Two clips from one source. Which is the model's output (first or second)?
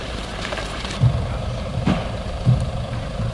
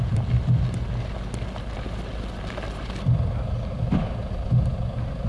first